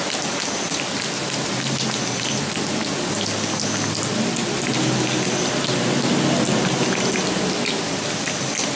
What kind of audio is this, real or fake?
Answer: real